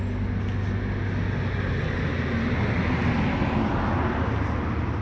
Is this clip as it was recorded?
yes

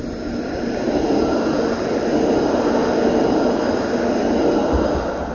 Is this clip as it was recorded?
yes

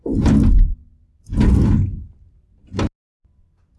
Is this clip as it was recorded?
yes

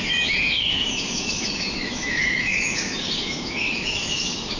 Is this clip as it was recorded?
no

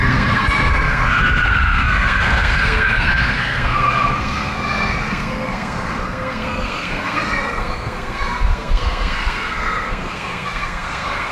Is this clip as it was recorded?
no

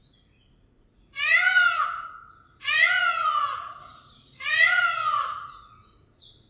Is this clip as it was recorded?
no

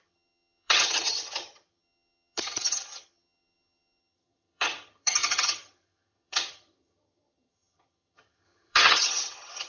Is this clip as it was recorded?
no